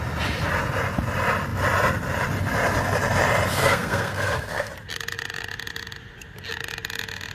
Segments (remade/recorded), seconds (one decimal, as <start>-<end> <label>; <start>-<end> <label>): 0.0-3.6 recorded; 3.6-4.7 remade; 4.7-7.3 recorded